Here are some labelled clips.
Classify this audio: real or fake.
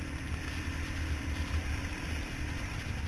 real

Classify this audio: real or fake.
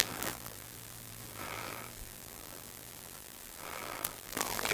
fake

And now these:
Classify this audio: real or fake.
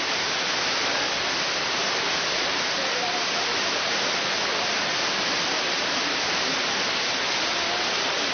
real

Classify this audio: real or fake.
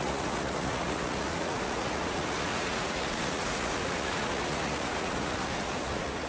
fake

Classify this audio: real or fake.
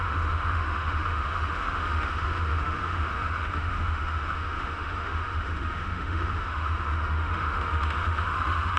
fake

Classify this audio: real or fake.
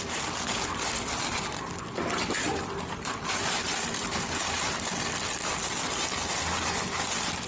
real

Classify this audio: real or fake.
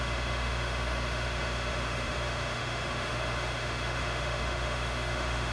fake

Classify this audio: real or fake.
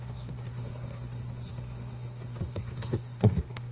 fake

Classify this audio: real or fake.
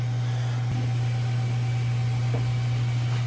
real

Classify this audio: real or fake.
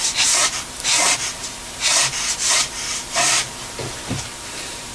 fake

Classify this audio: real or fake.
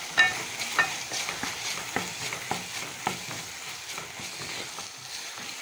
real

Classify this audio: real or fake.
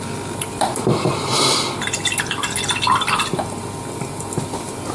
real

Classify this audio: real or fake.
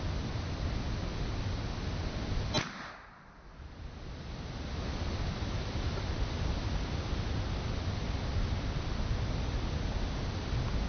real